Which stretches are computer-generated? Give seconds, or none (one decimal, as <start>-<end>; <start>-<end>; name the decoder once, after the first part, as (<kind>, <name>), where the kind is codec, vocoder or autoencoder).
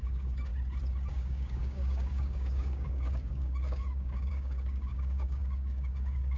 0.0-0.5 (codec, DAC); 1.1-6.4